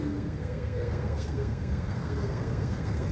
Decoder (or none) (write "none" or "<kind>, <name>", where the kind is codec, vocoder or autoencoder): codec, SNAC